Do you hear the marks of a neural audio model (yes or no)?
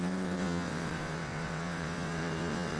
yes